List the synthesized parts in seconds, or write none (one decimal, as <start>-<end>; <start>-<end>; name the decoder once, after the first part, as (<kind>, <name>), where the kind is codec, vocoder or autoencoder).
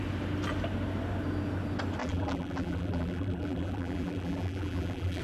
2.0-5.2 (vocoder, BigVGAN v2)